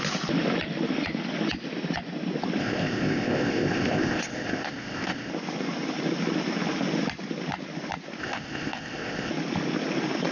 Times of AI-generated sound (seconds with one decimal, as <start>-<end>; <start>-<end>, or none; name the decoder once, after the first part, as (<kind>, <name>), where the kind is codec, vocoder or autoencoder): 2.6-5.3 (codec, ZipCodec); 8.2-9.3